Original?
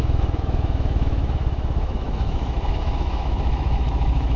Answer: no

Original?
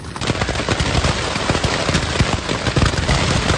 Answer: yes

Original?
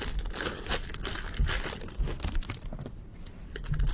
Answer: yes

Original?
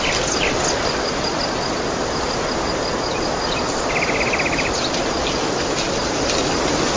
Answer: yes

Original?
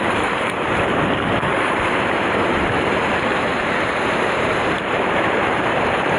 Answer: no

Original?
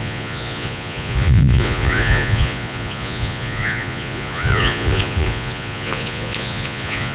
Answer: no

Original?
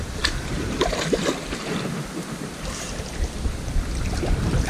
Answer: no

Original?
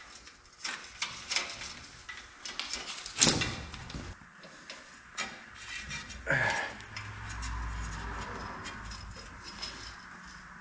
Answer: yes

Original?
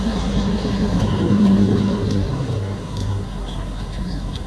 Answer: no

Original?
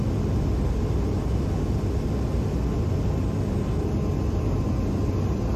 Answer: yes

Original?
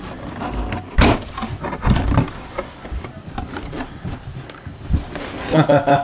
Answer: yes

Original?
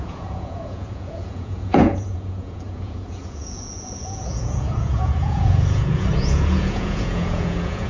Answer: no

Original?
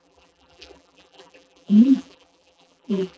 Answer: no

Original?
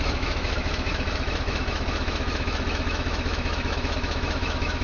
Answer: no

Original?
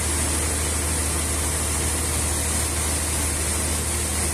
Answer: yes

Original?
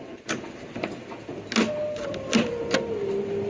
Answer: yes